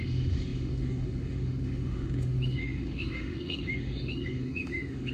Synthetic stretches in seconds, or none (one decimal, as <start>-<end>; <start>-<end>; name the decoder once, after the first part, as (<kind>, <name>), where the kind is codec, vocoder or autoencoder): 0.0-5.1 (autoencoder, DAC-VAE)

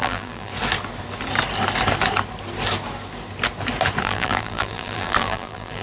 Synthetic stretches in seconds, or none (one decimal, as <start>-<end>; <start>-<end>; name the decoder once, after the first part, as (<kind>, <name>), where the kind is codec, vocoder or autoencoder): 0.0-0.5 (vocoder, BigVGAN v2); 4.0-5.8

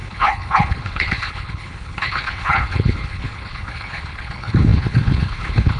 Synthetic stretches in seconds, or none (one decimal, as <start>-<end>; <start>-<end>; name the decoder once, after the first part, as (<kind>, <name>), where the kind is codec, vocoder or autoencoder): 0.0-5.8 (codec, HILCodec)

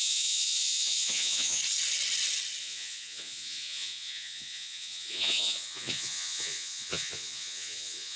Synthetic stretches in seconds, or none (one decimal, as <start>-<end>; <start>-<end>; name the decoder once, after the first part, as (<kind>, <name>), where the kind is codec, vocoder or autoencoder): 0.0-1.6 (vocoder, Vocos); 2.6-8.2

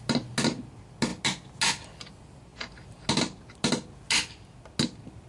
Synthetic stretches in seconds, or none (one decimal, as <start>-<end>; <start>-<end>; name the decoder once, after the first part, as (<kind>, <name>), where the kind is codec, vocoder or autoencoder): none

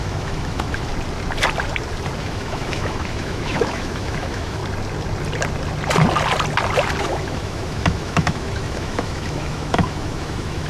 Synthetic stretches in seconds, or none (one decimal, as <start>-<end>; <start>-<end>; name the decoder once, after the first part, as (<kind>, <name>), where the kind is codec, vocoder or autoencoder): 0.0-0.9 (autoencoder, DAC-VAE); 2.2-4.6; 7.0-10.7

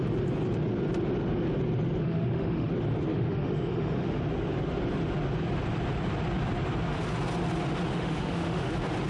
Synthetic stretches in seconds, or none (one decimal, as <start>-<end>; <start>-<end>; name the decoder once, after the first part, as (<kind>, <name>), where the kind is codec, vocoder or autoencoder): 2.0-2.7 (autoencoder, DAC-VAE); 3.1-4.2; 7.9-8.7